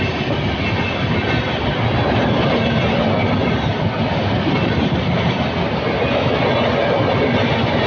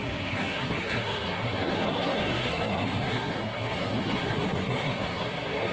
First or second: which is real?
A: first